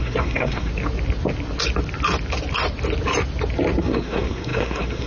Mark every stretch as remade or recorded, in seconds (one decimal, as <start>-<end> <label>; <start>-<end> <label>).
0.0-0.7 remade; 0.7-3.8 recorded; 3.8-5.1 remade